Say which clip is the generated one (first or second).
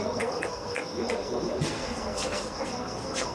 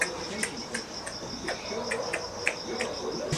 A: first